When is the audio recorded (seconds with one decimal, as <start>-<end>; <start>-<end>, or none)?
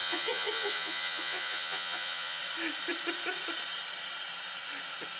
2.4-5.2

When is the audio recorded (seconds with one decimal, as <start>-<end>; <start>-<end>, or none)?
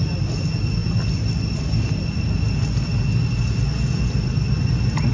0.0-5.1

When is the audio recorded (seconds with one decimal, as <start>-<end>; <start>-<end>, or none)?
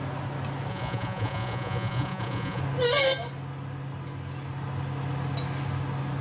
0.0-0.7; 2.6-6.2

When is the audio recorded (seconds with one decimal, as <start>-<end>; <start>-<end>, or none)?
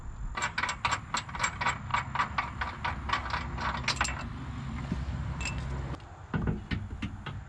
0.0-7.5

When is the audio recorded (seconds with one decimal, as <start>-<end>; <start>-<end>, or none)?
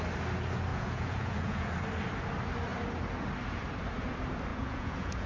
0.0-0.7; 1.7-4.5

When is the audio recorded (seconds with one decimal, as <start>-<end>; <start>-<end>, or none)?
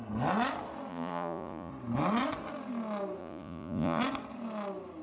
0.0-0.9; 1.7-3.2; 4.0-5.0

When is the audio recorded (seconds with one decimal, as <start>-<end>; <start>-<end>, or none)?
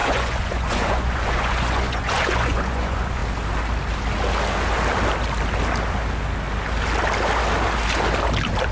3.2-8.7